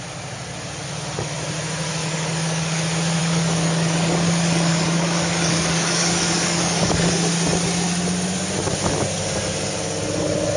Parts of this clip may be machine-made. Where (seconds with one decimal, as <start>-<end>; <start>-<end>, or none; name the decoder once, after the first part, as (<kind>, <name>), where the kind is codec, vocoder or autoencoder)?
2.0-2.8 (codec, DAC); 3.2-7.1